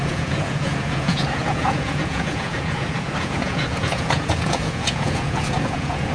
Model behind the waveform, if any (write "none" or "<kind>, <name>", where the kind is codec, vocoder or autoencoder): vocoder, Vocos